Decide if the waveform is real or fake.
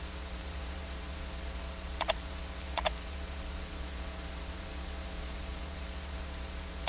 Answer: fake